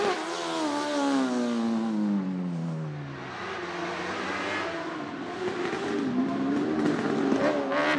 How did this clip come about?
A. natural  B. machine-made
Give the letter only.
A